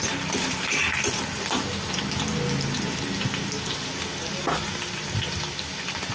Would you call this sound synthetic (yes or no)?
no